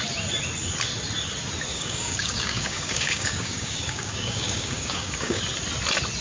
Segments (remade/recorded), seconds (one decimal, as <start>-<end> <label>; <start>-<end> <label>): 0.0-1.7 recorded; 1.7-5.4 remade; 5.4-6.2 recorded